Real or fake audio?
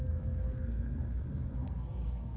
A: fake